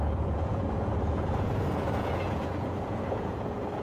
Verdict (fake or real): fake